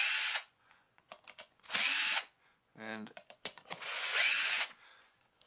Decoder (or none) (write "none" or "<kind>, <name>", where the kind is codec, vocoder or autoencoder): vocoder, Vocos